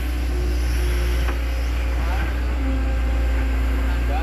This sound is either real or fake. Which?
real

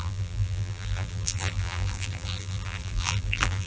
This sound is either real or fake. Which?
fake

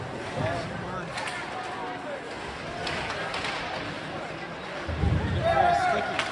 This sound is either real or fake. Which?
real